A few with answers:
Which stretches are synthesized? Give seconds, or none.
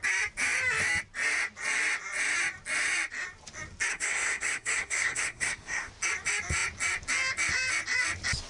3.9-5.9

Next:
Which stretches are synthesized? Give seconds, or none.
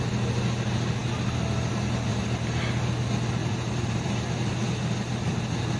2.1-2.7; 3.4-4.2